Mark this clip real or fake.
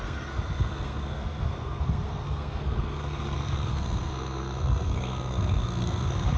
fake